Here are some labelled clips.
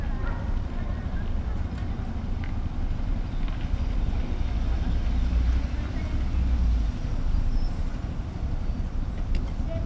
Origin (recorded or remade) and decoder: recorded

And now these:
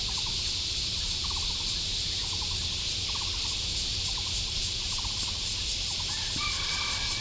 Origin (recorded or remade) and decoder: remade, vocoder, BigVGAN v2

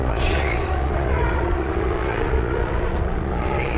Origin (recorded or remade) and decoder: remade, vocoder, Vocos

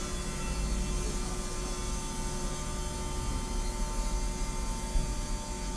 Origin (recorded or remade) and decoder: recorded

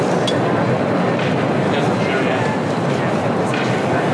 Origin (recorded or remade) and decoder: recorded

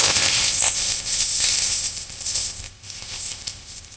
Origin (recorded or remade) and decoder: remade, codec, ZipCodec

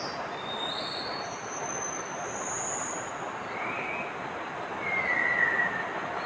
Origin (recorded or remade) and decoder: recorded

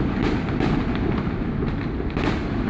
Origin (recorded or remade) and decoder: recorded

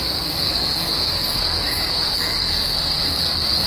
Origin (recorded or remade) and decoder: remade, codec, SNAC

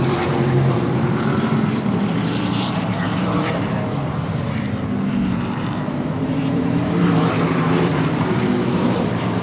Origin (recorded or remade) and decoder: remade, vocoder, BigVGAN v2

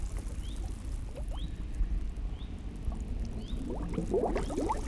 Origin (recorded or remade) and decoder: recorded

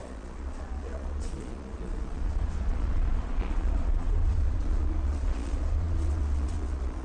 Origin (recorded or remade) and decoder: remade, vocoder, Vocos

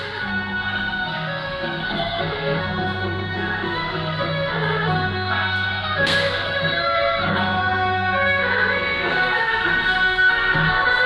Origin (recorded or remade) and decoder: remade, codec, SNAC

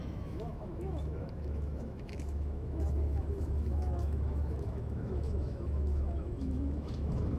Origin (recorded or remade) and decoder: remade, autoencoder, DAC-VAE